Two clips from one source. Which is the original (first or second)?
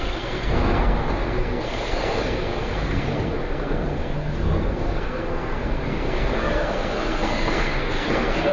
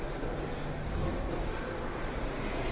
second